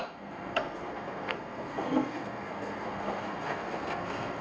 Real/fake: fake